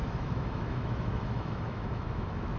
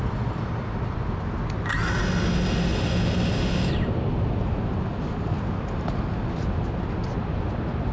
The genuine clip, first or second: second